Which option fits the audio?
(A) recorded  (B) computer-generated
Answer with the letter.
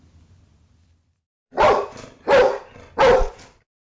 A